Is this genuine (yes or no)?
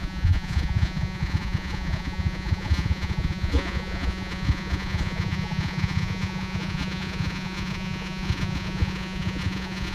no